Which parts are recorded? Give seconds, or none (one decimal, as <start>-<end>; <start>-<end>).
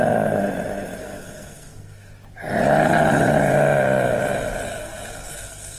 0.0-1.0; 2.1-4.7